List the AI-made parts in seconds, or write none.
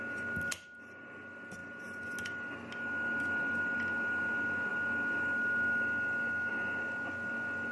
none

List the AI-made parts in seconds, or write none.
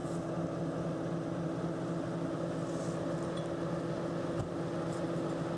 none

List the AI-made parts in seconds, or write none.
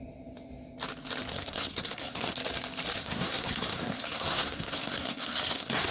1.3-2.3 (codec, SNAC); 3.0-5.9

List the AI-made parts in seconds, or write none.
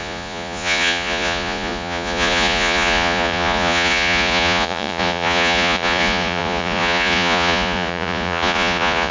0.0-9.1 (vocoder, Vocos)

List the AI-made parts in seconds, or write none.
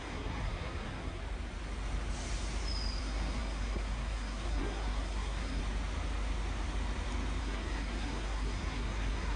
0.0-1.2 (codec, SNAC); 3.0-5.6; 7.4-9.4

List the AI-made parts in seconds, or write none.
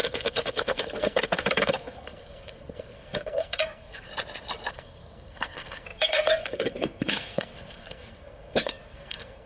0.0-4.1 (codec, SNAC); 4.7-9.5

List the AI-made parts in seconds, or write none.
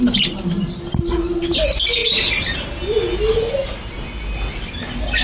none